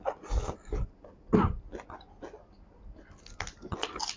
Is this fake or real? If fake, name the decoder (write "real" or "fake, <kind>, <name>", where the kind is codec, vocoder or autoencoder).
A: real